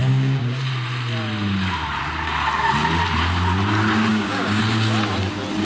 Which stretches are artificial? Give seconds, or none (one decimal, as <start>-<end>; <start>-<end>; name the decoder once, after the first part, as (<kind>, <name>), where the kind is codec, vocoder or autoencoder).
0.0-0.6 (codec, DAC); 4.1-4.6